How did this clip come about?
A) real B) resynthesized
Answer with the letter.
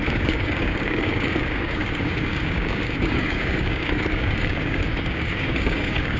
B